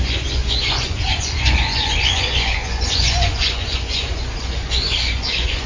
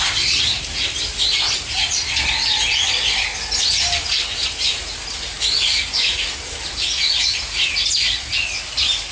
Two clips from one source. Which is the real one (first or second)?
second